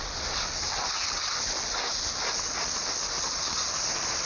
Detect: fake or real real